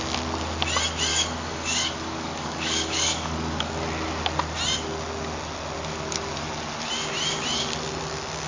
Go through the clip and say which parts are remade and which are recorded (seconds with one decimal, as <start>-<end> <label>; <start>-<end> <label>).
0.0-1.1 recorded; 1.1-3.7 remade; 3.7-8.5 recorded